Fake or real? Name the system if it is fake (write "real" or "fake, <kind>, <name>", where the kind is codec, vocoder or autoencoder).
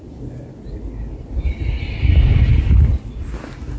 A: real